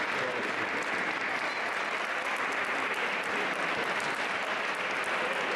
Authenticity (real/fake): real